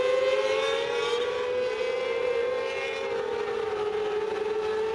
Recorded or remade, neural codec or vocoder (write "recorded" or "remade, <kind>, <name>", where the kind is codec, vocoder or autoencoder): recorded